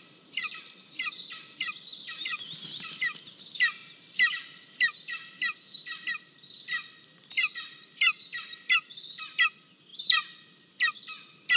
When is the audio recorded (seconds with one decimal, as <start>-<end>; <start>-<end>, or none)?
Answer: 0.0-11.6